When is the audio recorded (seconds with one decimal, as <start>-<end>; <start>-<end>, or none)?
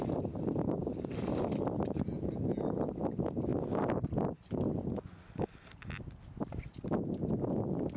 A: 0.0-8.0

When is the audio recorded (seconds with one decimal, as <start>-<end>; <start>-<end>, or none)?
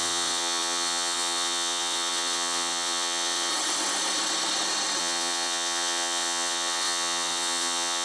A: 3.5-5.0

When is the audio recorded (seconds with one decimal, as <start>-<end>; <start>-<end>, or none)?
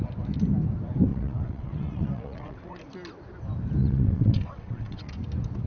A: 0.0-1.1; 2.8-3.8; 5.1-5.7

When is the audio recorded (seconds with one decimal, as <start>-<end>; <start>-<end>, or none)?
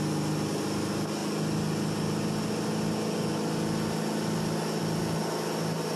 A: 0.0-6.0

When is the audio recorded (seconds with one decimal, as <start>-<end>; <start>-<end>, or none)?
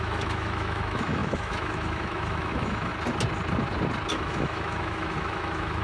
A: 2.9-4.1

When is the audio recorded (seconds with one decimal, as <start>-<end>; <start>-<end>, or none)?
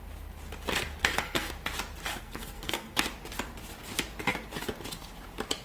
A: 0.0-1.0; 1.5-2.1; 3.1-5.6